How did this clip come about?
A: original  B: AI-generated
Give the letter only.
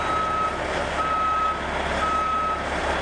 A